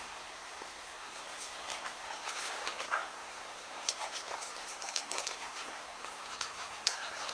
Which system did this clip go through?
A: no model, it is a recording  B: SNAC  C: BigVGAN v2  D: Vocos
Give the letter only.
B